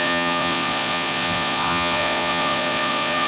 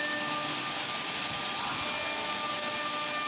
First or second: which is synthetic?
first